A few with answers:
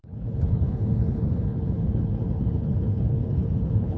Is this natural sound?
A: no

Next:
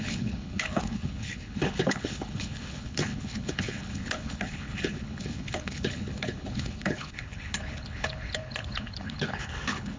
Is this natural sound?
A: no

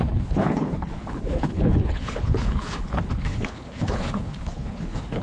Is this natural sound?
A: no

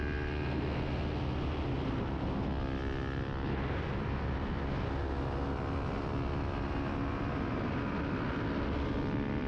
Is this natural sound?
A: yes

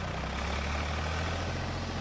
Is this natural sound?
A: yes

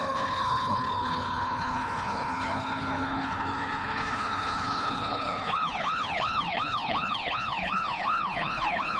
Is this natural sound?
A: no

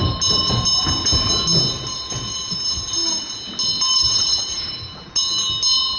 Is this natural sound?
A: yes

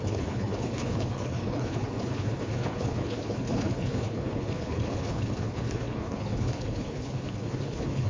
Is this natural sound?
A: no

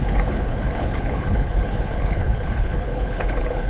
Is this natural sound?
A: no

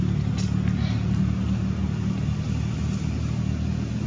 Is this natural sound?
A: yes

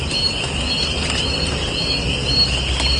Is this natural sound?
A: yes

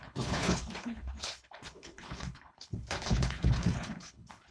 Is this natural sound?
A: no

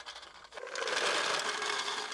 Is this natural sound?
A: yes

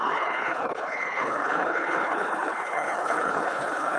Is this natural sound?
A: no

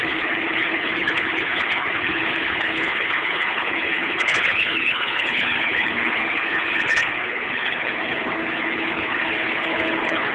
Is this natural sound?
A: no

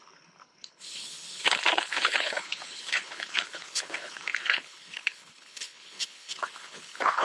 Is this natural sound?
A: no